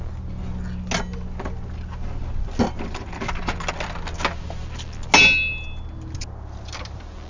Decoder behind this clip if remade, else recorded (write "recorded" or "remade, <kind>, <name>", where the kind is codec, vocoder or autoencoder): recorded